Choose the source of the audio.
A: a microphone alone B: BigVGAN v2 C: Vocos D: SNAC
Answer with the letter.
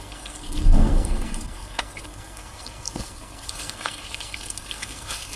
D